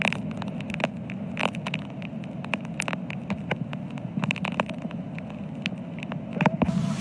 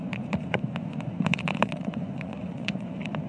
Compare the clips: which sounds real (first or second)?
first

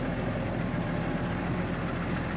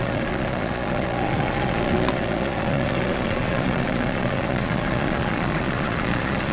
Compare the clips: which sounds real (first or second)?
first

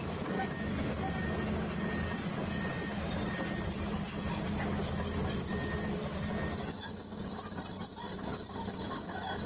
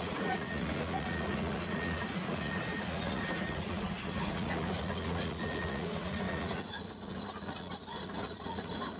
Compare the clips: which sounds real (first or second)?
first